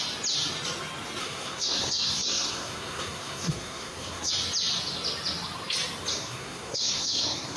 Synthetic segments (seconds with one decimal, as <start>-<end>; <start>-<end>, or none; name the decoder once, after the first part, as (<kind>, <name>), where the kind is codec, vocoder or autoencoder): 1.2-4.3 (codec, SNAC); 6.1-7.6